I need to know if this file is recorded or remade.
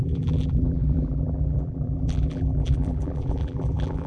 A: remade